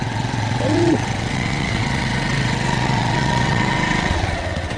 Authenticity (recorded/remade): remade